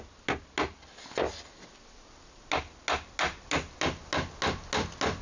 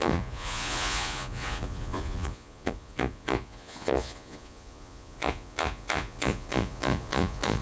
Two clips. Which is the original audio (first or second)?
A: first